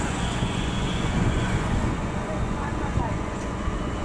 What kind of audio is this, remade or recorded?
remade